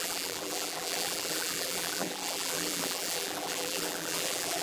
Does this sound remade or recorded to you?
remade